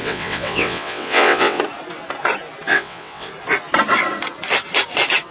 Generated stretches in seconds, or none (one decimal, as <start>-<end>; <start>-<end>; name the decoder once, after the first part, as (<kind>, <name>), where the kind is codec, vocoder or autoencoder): 0.0-1.6 (vocoder, WaveNeXt); 2.7-3.3